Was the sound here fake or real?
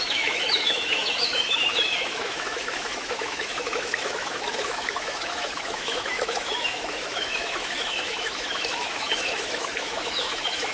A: fake